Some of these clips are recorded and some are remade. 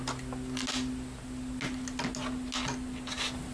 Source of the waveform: recorded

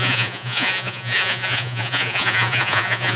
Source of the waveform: remade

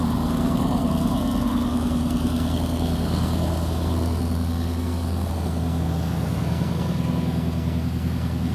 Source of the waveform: remade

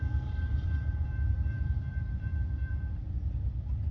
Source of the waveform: remade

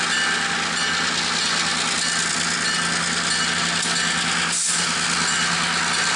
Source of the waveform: recorded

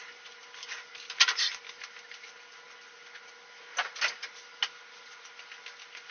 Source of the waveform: recorded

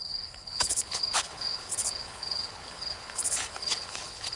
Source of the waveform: remade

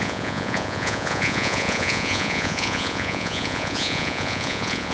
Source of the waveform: remade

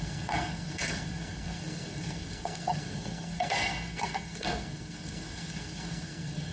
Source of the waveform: remade